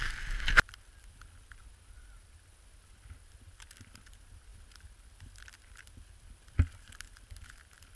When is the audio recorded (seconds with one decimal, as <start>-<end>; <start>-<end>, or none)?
0.0-8.0